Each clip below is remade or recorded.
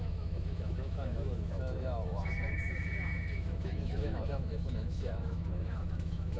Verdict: remade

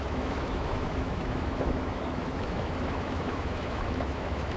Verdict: remade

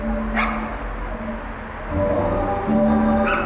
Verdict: recorded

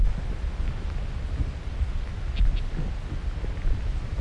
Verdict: recorded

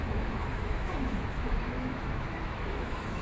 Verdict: remade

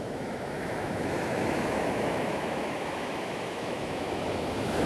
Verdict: remade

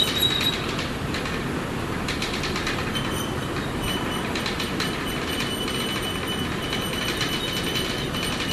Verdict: recorded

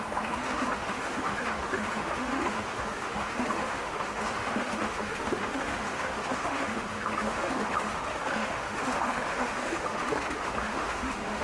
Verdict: remade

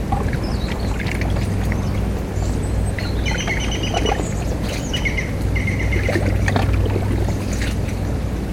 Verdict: recorded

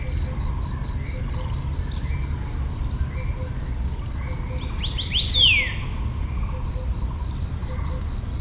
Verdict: recorded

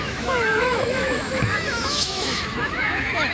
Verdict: remade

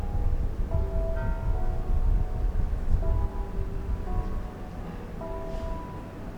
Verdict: recorded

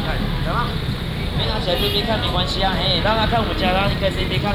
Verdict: recorded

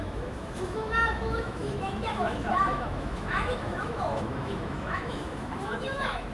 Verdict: remade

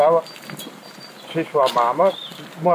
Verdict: recorded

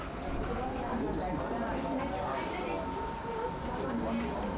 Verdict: recorded